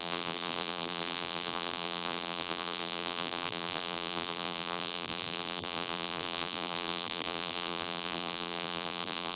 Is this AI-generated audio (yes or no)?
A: yes